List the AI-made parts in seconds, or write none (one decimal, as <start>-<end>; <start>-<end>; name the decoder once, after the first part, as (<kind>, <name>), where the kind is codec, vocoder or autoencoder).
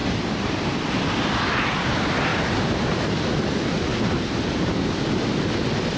0.0-0.9 (vocoder, BigVGAN v2); 2.3-3.3; 3.9-4.7